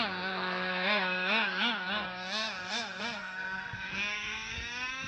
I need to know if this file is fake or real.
fake